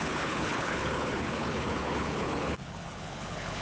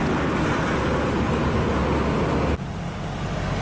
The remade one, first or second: first